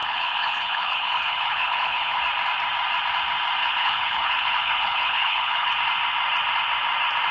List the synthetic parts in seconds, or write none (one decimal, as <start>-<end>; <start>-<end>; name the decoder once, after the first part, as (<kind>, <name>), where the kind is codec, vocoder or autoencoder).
0.0-2.2 (codec, HILCodec); 3.6-5.7